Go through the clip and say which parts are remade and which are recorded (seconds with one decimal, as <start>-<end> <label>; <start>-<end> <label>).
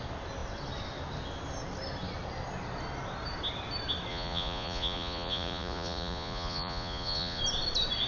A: 0.0-4.1 recorded; 4.1-7.4 remade; 7.4-8.1 recorded